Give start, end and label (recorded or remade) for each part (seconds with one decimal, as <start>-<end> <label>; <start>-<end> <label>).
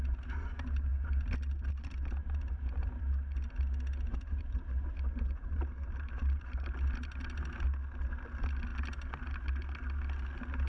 0.0-2.2 recorded; 2.2-3.0 remade; 3.0-4.1 recorded; 4.1-6.9 remade; 6.9-10.7 recorded